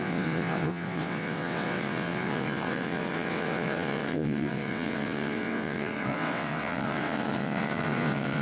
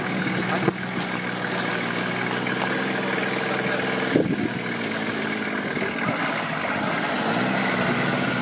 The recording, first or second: second